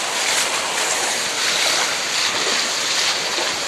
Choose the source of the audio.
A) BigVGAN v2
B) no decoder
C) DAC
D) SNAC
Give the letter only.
B